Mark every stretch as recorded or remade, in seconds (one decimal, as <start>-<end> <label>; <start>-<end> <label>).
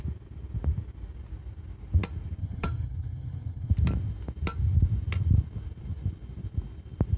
0.0-2.4 recorded; 2.4-3.7 remade; 3.7-7.2 recorded